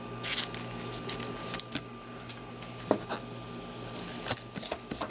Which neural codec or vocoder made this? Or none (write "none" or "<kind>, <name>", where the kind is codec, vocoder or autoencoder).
none